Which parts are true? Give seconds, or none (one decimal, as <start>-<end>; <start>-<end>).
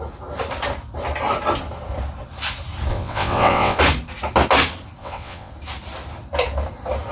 0.0-2.9; 3.8-5.0; 5.5-7.1